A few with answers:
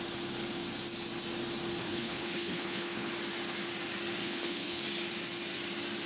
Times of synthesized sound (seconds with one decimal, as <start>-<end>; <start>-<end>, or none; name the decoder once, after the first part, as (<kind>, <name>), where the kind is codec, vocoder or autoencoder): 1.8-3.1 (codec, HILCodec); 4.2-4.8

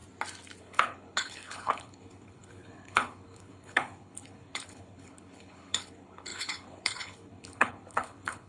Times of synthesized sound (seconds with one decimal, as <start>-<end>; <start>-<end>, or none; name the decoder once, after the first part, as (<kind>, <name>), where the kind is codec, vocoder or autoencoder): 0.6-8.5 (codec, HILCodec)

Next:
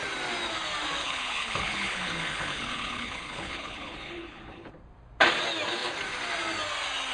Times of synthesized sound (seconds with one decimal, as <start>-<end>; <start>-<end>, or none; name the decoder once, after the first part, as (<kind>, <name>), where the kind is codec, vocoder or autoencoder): 1.0-4.7 (codec, HILCodec)

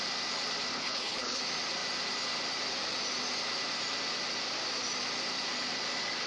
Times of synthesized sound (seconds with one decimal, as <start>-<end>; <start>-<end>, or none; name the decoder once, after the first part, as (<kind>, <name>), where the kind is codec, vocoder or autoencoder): 0.7-1.4 (codec, HILCodec)